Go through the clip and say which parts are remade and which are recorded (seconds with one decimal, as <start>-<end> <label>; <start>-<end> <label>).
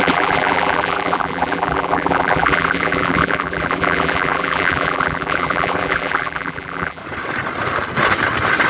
0.0-7.0 remade; 7.0-8.7 recorded